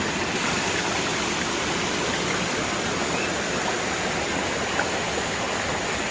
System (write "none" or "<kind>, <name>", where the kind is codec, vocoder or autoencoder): none